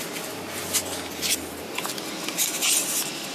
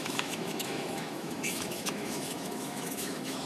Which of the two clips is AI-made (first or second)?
second